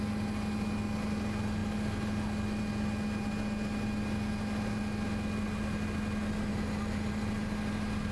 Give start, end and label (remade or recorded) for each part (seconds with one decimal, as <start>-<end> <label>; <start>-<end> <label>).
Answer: 0.0-8.1 recorded